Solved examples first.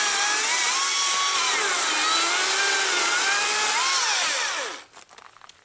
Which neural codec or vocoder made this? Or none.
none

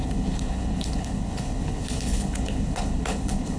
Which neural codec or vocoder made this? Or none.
codec, HILCodec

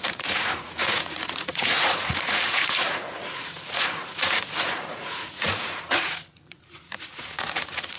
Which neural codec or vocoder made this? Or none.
vocoder, Vocos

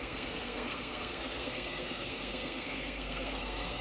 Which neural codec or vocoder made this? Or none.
codec, SNAC